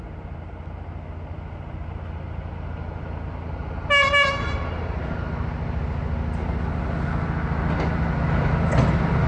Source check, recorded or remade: recorded